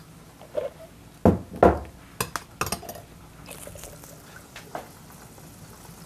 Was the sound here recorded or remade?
recorded